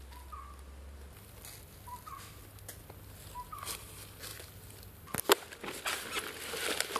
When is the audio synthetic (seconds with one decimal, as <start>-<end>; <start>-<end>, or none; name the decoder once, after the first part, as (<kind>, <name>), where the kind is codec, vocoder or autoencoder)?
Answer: none